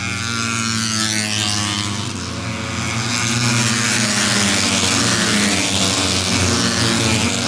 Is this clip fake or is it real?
real